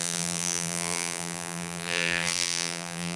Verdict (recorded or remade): remade